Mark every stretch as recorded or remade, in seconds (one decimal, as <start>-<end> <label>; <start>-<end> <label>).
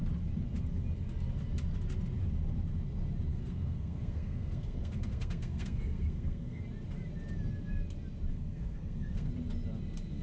0.0-3.3 recorded; 3.3-6.6 remade; 6.6-8.3 recorded; 8.3-9.3 remade; 9.3-10.2 recorded